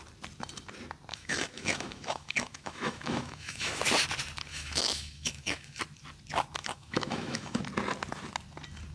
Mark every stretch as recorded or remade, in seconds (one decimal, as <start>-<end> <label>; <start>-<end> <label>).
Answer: 0.0-1.1 recorded; 1.1-3.8 remade; 3.8-4.5 recorded; 4.5-5.8 remade; 5.8-6.6 recorded; 6.6-7.6 remade; 7.6-8.9 recorded